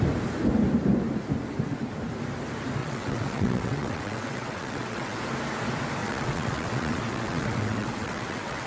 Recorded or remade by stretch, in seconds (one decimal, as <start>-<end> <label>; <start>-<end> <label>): 0.0-2.8 recorded; 2.8-5.2 remade; 5.2-6.0 recorded; 6.0-8.7 remade